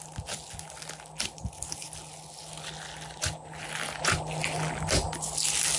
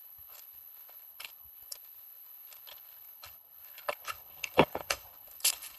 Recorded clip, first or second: first